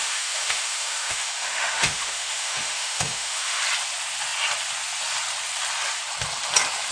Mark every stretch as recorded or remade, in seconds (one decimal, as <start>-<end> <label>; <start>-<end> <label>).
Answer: 0.0-3.6 remade; 3.6-6.9 recorded